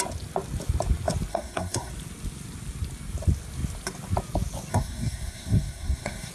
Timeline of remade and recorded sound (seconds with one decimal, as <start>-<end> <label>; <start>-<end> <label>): 0.0-1.3 recorded; 1.3-1.9 remade; 1.9-4.7 recorded; 4.7-6.3 remade